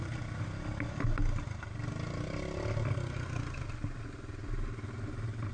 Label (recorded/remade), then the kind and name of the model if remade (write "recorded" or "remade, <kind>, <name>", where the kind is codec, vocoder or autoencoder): recorded